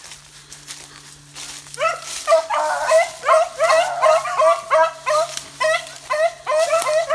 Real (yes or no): yes